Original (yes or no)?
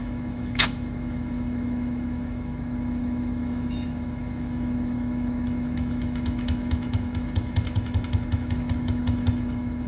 no